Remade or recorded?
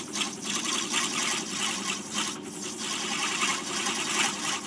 recorded